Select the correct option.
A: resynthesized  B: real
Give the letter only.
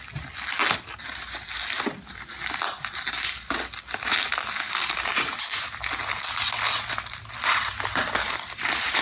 B